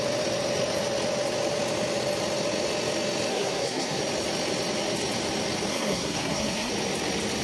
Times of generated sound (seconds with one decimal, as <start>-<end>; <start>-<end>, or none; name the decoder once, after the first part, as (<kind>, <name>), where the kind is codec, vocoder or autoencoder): 3.3-4.0 (codec, SNAC); 5.7-6.7